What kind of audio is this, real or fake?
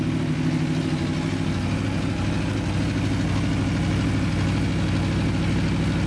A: real